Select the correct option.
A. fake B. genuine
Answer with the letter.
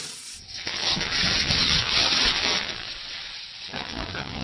A